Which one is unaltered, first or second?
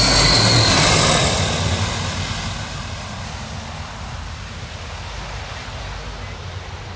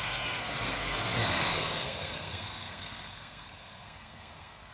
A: first